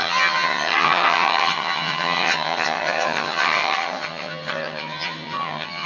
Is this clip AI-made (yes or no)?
yes